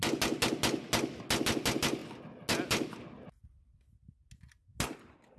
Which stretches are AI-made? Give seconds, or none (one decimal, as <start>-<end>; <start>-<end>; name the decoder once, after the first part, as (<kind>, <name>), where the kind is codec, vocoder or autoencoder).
none